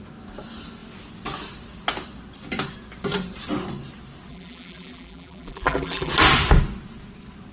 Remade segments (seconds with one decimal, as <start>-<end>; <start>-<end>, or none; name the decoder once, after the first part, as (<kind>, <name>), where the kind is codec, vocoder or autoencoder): 4.3-6.1 (vocoder, BigVGAN v2)